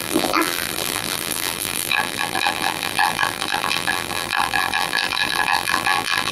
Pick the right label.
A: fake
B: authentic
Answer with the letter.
A